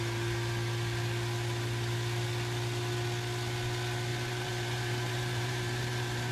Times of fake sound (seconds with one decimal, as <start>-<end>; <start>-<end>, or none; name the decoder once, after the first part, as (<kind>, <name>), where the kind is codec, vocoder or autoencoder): 4.1-6.3 (vocoder, BigVGAN v2)